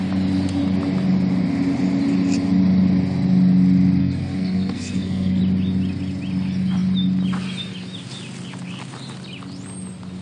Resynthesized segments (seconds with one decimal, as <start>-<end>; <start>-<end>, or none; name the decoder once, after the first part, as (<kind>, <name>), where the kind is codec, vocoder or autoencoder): 4.0-5.4 (codec, SNAC)